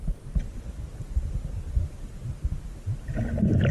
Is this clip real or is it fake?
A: real